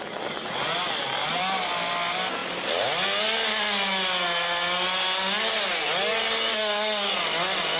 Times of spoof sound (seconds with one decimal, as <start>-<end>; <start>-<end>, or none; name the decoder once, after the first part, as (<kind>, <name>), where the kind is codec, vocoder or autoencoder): 6.5-7.1 (codec, DAC)